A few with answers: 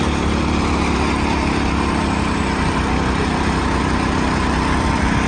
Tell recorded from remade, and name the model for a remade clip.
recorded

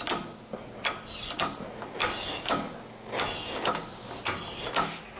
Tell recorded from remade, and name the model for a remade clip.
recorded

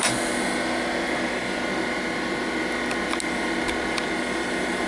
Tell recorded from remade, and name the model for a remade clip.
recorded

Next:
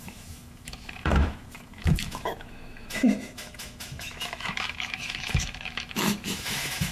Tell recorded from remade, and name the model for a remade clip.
remade, autoencoder, DAC-VAE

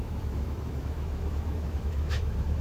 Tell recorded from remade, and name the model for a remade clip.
remade, autoencoder, DAC-VAE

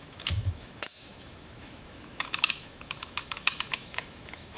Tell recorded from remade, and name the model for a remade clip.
remade, autoencoder, DAC-VAE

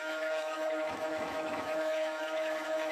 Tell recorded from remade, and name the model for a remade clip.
remade, autoencoder, DAC-VAE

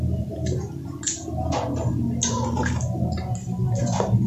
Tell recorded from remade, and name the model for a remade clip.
recorded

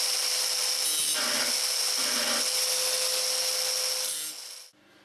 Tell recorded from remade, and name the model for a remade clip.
recorded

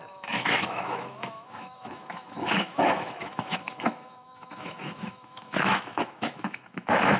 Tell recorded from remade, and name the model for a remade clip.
remade, autoencoder, DAC-VAE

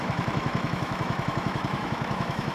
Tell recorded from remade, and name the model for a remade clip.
remade, autoencoder, DAC-VAE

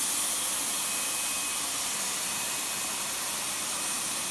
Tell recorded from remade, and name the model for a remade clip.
recorded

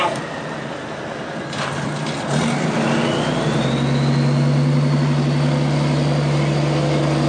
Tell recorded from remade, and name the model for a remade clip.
recorded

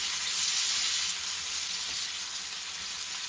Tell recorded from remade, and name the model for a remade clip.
recorded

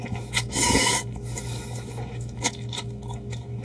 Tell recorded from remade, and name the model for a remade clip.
remade, autoencoder, DAC-VAE